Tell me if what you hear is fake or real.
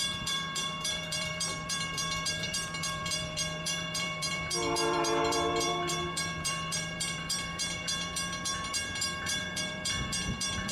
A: fake